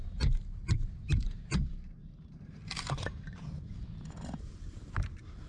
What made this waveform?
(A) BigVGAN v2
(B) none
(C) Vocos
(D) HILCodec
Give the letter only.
A